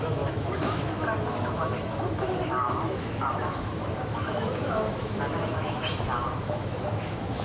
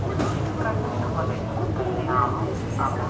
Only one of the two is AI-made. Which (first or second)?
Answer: first